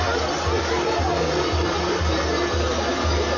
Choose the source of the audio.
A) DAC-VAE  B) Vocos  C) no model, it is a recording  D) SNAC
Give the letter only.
C